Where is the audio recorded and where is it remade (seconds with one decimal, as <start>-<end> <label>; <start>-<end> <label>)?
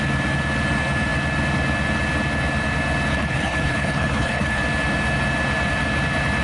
0.0-3.1 recorded; 3.1-4.6 remade; 4.6-6.4 recorded